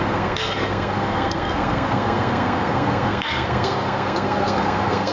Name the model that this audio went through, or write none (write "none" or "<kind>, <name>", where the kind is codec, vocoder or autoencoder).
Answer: codec, SNAC